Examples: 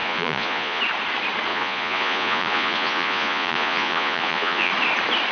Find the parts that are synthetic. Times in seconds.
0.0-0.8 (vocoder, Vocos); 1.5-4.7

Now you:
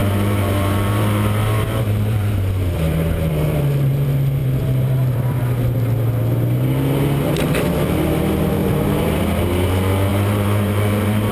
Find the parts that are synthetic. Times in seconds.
0.0-3.9 (vocoder, BigVGAN v2); 4.4-5.4; 8.6-9.2; 10.1-11.3

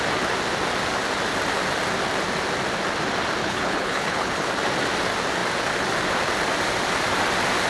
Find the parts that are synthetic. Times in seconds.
3.4-4.5 (codec, HILCodec)

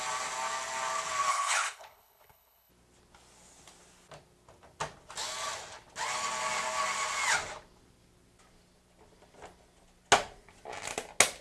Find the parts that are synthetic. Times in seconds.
1.3-2.7 (codec, HILCodec)

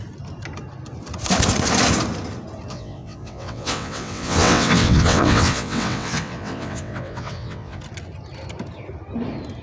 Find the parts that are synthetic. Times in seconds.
2.7-7.8 (vocoder, WaveNeXt)

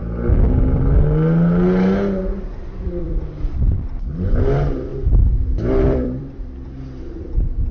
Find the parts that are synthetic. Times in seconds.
2.8-4.9 (vocoder, BigVGAN v2); 5.7-7.7

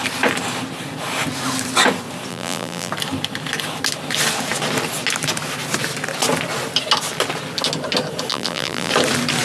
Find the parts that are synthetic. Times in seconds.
2.3-2.9 (vocoder, BigVGAN v2); 8.3-8.9